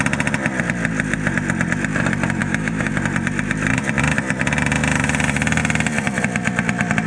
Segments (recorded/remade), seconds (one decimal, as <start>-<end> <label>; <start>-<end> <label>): 0.0-2.4 recorded; 2.4-2.9 remade; 2.9-7.1 recorded